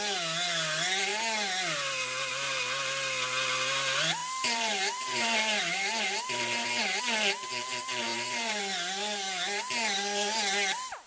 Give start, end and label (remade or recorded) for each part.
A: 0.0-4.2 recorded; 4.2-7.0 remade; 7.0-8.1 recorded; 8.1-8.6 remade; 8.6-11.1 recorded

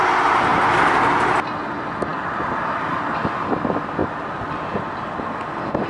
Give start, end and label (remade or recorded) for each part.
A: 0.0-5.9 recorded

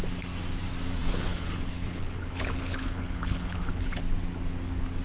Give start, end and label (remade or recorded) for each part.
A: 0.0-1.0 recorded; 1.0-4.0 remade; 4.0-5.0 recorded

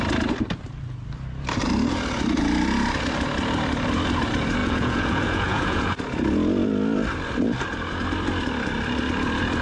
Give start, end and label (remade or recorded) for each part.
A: 0.0-4.6 recorded; 4.6-5.9 remade; 5.9-9.6 recorded